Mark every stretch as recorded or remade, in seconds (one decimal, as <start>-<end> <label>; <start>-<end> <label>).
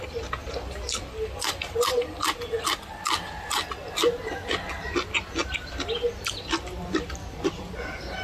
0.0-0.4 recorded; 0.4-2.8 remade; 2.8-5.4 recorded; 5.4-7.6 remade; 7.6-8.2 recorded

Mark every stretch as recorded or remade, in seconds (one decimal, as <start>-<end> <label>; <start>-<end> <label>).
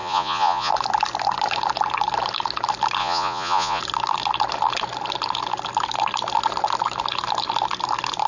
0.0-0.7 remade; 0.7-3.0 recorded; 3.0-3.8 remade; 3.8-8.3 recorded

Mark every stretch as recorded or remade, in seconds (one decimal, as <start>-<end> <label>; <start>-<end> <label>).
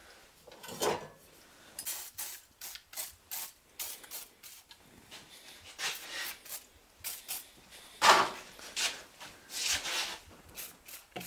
0.0-11.3 recorded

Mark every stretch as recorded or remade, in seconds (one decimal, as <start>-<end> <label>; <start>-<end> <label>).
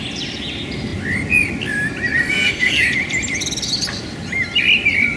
0.0-2.2 recorded; 2.2-2.7 remade; 2.7-5.2 recorded